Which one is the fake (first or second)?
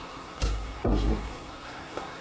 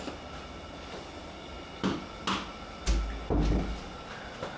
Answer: first